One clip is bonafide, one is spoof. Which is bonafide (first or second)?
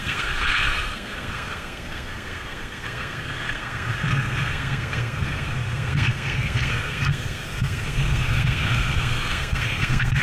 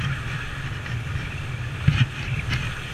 second